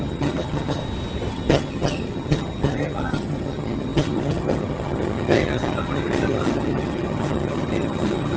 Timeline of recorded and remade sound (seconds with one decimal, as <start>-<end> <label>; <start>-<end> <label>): 0.0-0.8 remade; 0.8-1.3 recorded; 1.3-8.4 remade